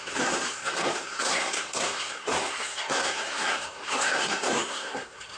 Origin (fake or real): fake